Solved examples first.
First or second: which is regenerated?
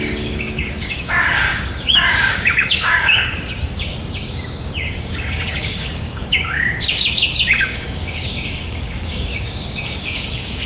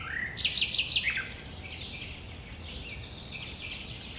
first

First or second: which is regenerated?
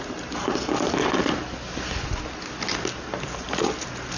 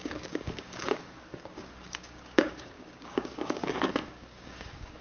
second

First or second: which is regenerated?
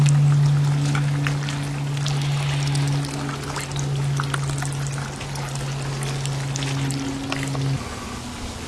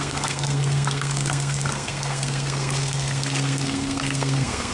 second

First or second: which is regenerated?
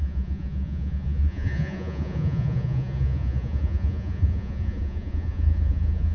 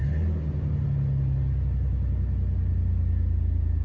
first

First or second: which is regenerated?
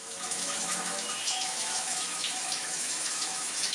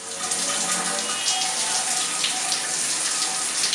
first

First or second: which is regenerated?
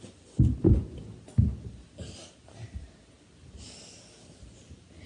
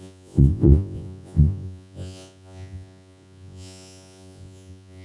second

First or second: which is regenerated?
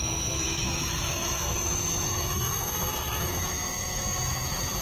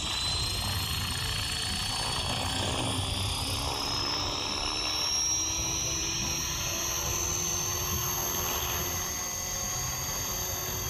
first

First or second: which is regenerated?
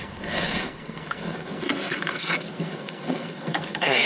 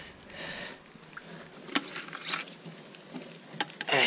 first